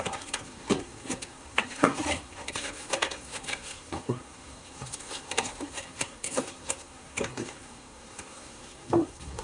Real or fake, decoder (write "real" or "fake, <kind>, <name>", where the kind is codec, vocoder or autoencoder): fake, codec, SNAC